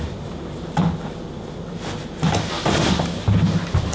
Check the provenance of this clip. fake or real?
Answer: real